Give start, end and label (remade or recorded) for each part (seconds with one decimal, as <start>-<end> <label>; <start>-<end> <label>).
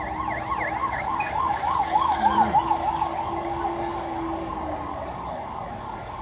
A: 0.0-0.8 recorded; 0.8-4.5 remade; 4.5-4.9 recorded; 4.9-6.2 remade